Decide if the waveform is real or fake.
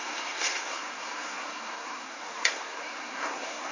fake